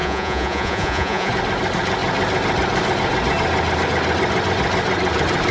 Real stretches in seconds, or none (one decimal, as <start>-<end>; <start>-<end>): 1.3-5.5